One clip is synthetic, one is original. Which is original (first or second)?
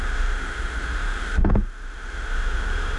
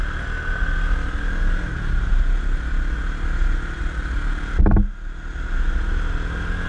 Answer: second